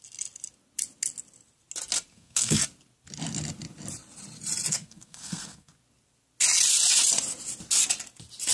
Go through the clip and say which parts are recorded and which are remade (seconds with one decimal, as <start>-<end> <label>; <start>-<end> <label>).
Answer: 0.0-2.1 recorded; 2.1-2.6 remade; 2.6-4.7 recorded; 4.7-5.7 remade; 5.7-8.5 recorded